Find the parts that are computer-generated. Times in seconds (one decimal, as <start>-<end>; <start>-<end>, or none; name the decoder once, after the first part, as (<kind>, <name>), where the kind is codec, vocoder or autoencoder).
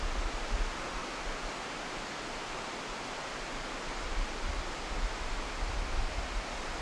none